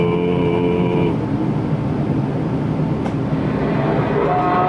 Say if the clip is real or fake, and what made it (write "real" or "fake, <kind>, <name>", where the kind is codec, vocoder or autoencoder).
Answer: real